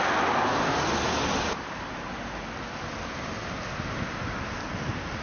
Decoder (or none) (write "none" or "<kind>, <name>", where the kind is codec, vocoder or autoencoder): none